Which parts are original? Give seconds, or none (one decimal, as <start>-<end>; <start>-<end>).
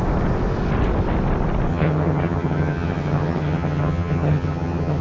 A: 0.0-1.7